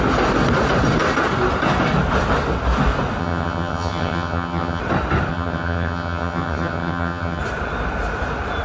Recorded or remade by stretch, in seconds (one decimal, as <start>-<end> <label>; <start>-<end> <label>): 0.0-3.2 recorded; 3.2-4.8 remade; 4.8-5.3 recorded; 5.3-7.4 remade; 7.4-8.6 recorded

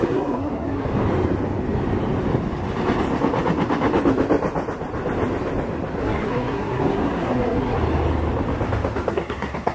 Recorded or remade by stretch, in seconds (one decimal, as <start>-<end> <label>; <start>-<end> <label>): 0.0-0.9 remade; 0.9-6.0 recorded; 6.0-7.8 remade; 7.8-9.1 recorded; 9.1-9.7 remade

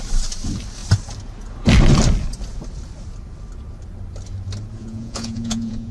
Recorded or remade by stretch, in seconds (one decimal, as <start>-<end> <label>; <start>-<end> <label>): 0.0-4.8 recorded; 4.8-5.9 remade